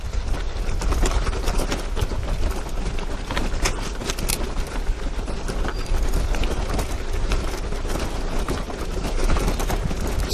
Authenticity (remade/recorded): recorded